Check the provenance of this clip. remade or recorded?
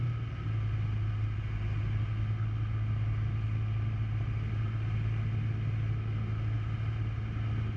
recorded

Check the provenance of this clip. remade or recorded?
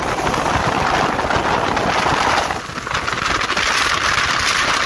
recorded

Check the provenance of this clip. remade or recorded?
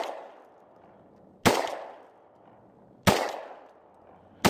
recorded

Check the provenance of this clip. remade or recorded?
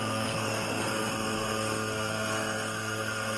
remade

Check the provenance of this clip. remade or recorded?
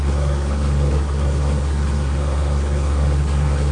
remade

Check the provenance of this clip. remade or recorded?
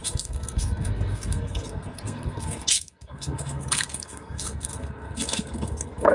remade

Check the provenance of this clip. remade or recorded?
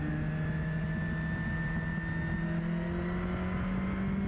recorded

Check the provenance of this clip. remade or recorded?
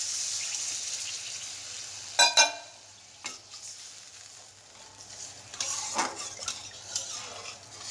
recorded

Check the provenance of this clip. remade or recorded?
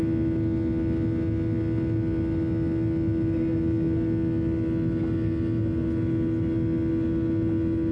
recorded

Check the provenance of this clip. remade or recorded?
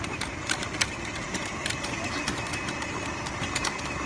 recorded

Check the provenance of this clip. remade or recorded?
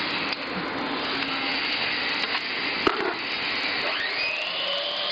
recorded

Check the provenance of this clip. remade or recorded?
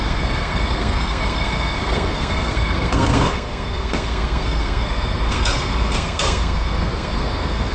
remade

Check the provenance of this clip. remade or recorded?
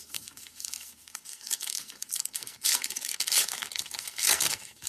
remade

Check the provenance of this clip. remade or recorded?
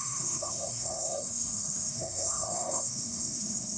remade